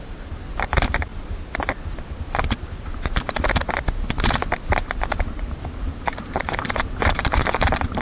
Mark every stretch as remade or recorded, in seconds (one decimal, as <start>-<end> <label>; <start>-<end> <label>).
0.0-1.1 remade; 1.1-5.8 recorded; 5.8-8.0 remade